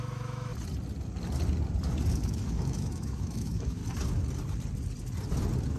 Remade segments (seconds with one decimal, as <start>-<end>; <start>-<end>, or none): 0.0-0.5; 2.1-3.8